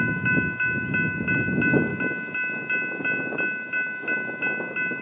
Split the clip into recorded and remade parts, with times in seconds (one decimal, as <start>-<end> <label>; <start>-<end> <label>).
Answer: 0.0-5.0 recorded